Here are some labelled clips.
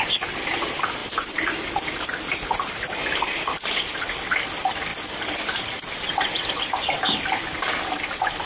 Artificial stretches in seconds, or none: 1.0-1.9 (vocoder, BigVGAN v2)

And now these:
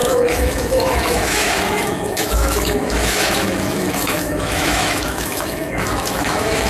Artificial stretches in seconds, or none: 0.0-6.7 (autoencoder, DAC-VAE)

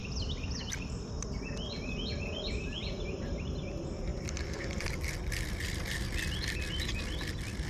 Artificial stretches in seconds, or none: none

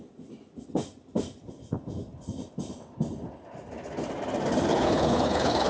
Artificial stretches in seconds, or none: 4.7-5.7 (codec, HILCodec)

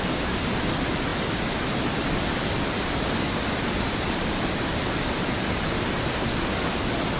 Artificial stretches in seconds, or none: none

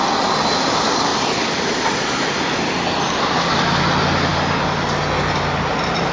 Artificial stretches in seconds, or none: none